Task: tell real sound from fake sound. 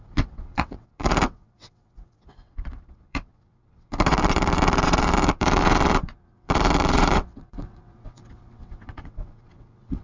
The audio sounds fake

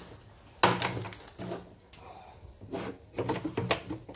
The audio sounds real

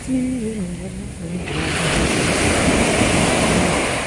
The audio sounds real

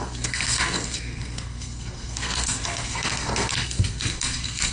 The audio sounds fake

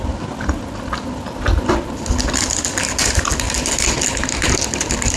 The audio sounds real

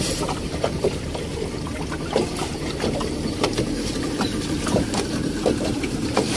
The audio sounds fake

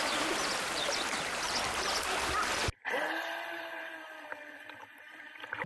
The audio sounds real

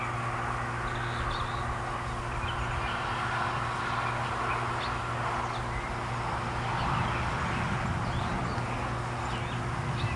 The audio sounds real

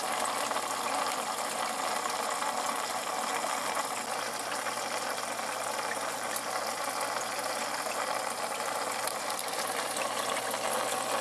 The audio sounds real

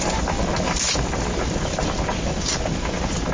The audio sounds real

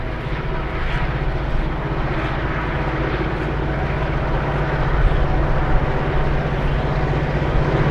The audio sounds real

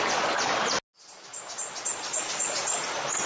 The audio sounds real